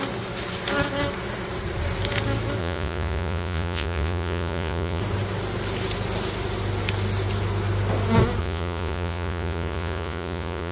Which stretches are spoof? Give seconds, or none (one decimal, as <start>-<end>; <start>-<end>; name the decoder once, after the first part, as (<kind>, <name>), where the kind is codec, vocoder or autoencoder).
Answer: 2.6-5.0 (vocoder, Vocos); 8.4-10.7

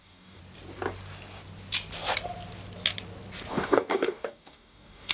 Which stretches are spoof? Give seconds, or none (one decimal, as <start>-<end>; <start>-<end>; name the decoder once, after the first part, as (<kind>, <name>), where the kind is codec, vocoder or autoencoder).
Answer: 0.0-0.4 (codec, DAC); 3.5-5.1

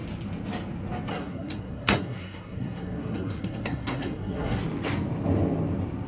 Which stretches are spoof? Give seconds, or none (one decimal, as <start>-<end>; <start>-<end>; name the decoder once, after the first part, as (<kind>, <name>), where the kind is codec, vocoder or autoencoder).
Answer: 1.1-4.6 (codec, SNAC)